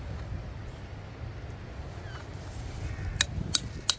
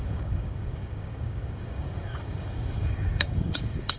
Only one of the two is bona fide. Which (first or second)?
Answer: first